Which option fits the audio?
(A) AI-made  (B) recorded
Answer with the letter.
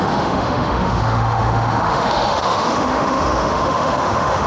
A